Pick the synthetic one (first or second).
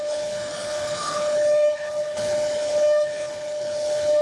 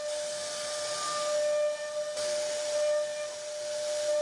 first